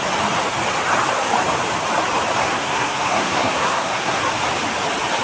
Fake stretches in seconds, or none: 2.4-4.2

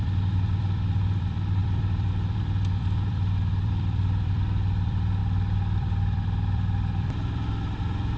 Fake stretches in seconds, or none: 0.0-8.2

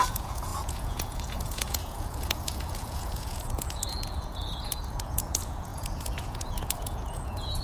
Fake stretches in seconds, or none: 0.0-7.6

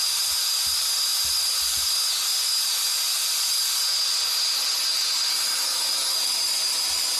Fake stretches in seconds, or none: none

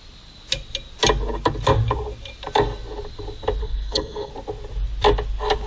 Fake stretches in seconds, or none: 3.6-4.3